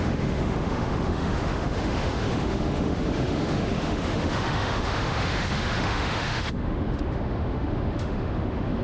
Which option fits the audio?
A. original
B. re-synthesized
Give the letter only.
B